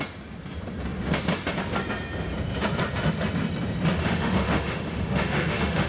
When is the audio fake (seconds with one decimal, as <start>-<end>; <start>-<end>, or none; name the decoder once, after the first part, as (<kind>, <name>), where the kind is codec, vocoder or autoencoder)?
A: 4.0-5.9 (autoencoder, DAC-VAE)